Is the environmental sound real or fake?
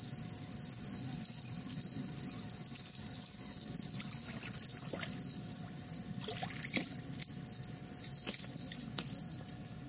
real